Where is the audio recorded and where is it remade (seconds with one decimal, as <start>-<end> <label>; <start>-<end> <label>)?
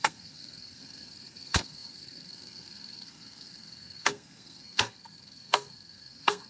0.0-6.5 remade